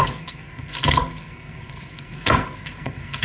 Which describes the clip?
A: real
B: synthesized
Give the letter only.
B